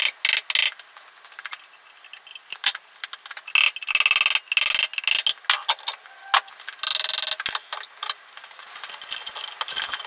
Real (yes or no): yes